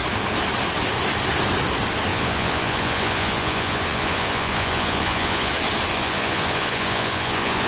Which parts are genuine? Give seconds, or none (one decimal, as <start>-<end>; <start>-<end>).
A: 0.0-2.1; 5.5-5.9